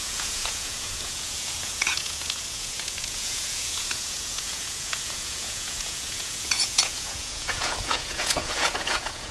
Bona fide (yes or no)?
no